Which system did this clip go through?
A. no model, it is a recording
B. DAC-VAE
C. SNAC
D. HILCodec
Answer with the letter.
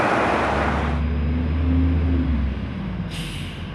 A